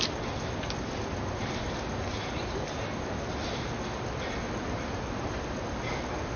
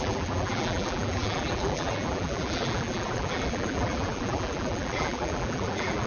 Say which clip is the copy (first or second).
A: second